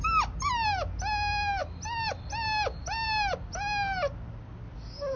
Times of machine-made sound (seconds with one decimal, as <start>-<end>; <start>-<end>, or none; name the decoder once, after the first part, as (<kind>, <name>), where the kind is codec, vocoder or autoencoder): none